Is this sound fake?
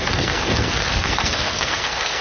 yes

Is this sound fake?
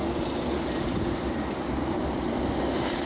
no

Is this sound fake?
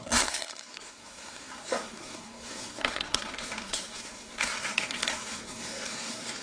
yes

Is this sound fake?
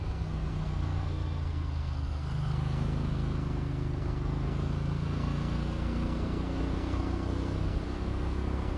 yes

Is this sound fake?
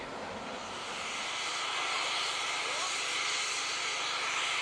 no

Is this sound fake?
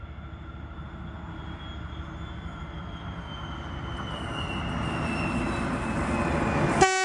no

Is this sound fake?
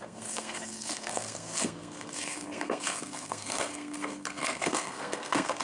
yes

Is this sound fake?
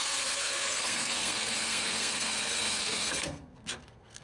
yes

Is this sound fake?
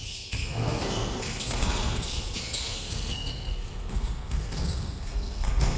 yes